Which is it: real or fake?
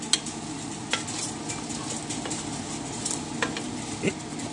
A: real